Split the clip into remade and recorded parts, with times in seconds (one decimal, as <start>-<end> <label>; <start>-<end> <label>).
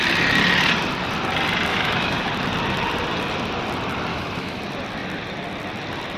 0.0-1.7 recorded; 1.7-2.3 remade; 2.3-4.1 recorded; 4.1-4.6 remade; 4.6-6.2 recorded